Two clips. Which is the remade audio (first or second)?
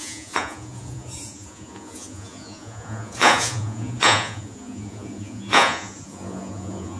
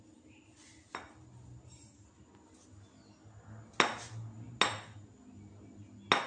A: first